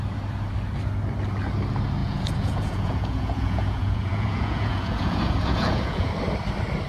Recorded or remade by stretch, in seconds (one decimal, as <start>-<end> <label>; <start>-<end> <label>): 0.0-2.0 recorded; 2.0-6.1 remade; 6.1-6.9 recorded